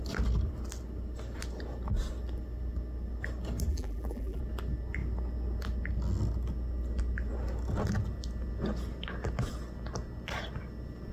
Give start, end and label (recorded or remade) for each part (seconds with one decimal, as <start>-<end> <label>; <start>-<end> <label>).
0.0-3.7 recorded; 3.7-4.4 remade; 4.4-11.1 recorded